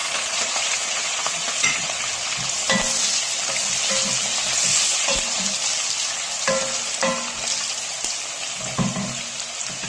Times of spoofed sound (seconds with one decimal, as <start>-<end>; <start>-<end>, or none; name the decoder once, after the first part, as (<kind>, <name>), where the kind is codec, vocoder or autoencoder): 0.0-2.0 (vocoder, Vocos); 4.7-5.4